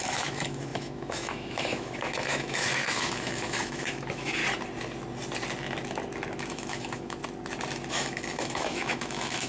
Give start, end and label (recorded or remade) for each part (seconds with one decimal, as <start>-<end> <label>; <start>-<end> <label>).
0.0-4.4 remade; 4.4-6.5 recorded; 6.5-7.2 remade; 7.2-7.9 recorded; 7.9-9.5 remade